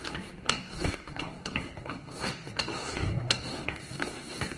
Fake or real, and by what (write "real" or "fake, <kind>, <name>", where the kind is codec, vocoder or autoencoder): fake, codec, SNAC